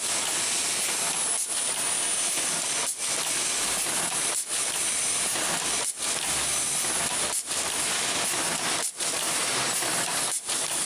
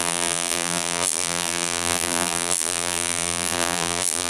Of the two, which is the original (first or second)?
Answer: first